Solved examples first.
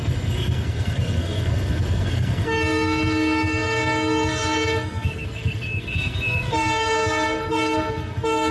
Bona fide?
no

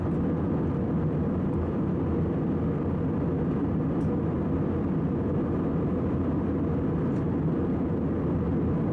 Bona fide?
yes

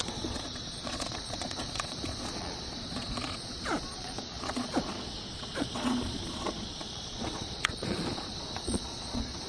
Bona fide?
no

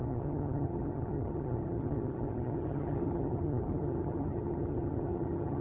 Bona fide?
no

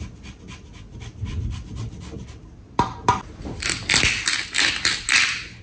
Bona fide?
yes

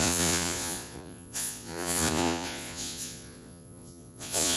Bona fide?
no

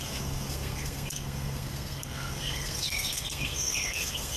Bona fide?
no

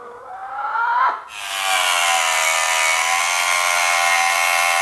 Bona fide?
yes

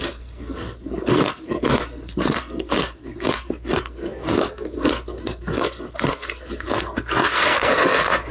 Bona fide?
no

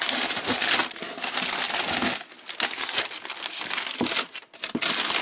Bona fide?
yes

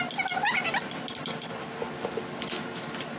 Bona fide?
yes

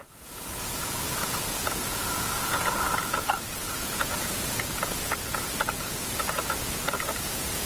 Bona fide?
no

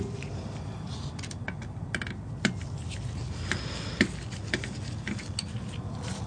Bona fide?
yes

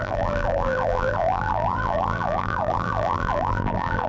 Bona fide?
no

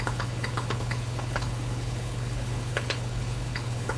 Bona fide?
no